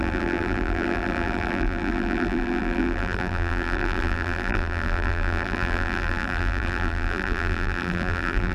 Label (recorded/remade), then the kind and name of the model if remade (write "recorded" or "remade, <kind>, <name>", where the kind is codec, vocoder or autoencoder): remade, vocoder, BigVGAN v2